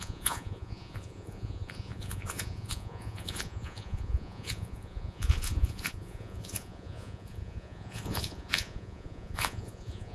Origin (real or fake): fake